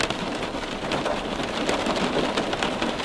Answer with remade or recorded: recorded